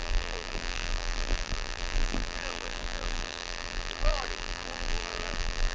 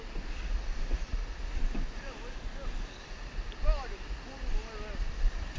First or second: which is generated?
first